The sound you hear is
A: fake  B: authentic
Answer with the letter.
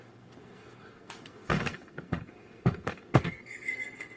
A